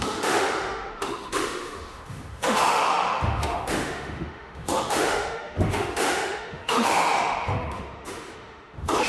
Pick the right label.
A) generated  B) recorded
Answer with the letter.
A